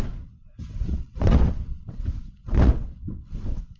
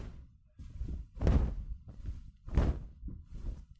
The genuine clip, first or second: second